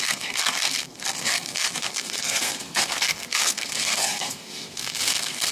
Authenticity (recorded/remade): remade